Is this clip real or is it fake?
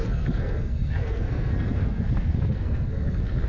fake